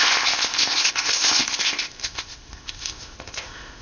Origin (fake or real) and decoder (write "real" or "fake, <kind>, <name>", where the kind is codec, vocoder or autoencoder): fake, codec, ZipCodec